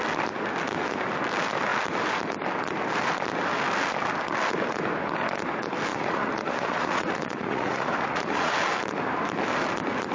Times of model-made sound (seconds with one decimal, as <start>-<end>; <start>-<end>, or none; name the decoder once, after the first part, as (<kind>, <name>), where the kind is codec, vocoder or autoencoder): 5.9-8.5 (vocoder, Vocos)